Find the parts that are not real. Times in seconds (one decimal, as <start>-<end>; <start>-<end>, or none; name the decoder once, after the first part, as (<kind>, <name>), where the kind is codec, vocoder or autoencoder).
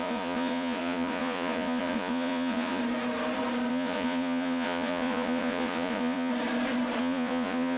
0.0-2.8 (vocoder, Vocos); 3.7-6.3; 7.0-7.8